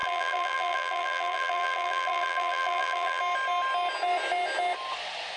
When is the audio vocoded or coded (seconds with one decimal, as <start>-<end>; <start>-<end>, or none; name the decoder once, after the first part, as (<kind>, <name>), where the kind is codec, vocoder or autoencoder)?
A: 0.0-3.2 (vocoder, BigVGAN v2)